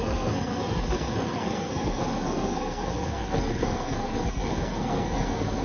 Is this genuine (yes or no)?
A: no